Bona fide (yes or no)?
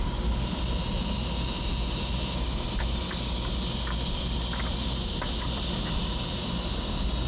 yes